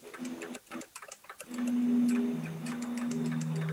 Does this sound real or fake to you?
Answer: real